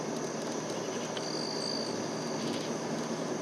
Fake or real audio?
real